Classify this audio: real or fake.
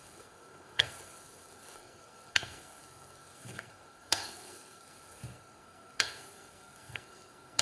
fake